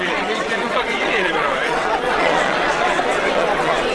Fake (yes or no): yes